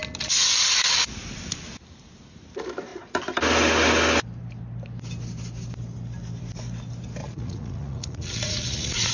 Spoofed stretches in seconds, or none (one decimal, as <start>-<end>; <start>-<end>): 7.2-9.1